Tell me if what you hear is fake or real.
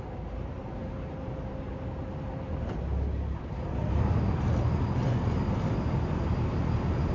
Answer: real